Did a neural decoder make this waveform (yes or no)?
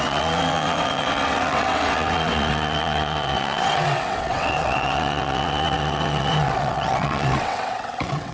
yes